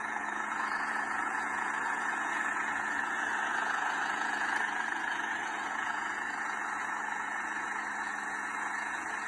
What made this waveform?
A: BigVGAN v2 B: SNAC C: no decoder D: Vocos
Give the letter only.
D